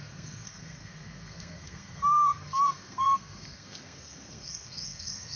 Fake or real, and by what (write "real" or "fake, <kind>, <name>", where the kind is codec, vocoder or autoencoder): fake, codec, SNAC